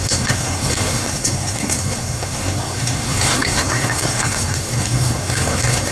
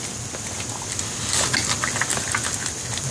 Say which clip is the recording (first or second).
second